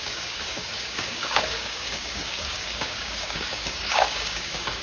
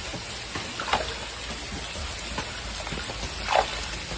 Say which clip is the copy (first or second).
first